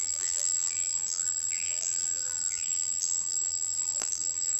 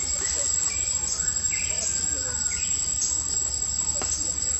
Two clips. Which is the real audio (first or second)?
second